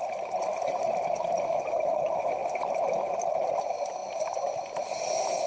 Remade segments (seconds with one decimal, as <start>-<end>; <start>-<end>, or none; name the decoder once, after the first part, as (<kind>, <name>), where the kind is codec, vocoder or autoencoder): none